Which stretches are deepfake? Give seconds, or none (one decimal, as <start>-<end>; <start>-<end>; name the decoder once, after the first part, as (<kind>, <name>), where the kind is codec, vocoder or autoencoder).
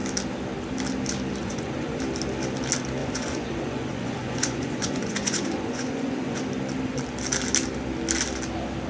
1.4-2.0 (vocoder, Vocos); 3.0-6.4